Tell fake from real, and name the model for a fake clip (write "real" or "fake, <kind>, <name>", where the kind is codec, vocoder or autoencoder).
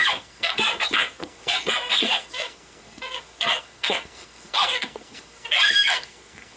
fake, codec, SNAC